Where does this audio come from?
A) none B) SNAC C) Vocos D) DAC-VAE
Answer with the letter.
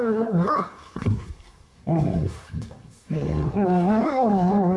B